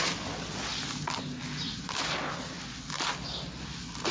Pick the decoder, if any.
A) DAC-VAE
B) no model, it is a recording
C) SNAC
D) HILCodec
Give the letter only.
B